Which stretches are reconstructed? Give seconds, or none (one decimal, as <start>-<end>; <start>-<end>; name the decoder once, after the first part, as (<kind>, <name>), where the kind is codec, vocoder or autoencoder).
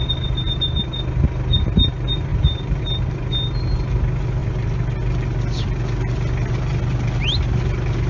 2.3-2.8 (vocoder, BigVGAN v2); 4.4-5.0